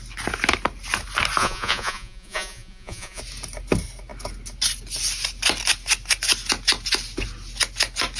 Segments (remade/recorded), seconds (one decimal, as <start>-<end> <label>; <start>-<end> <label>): 0.0-1.4 recorded; 1.4-3.2 remade; 3.2-8.2 recorded